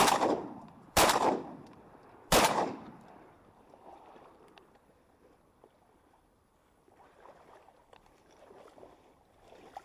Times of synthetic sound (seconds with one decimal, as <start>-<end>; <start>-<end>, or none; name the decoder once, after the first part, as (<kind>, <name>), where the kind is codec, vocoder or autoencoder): 0.0-9.8 (vocoder, BigVGAN v2)